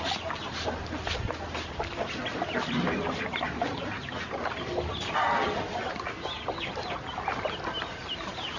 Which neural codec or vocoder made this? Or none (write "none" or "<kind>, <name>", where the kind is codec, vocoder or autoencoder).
none